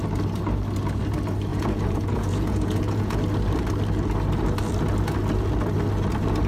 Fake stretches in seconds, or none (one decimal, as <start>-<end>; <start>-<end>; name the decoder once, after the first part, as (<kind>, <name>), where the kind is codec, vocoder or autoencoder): 1.5-3.2 (vocoder, Vocos)